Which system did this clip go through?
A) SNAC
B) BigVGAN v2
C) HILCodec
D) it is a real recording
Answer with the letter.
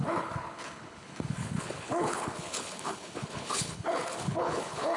C